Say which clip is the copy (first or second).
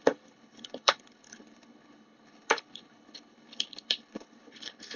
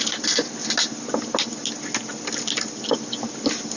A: first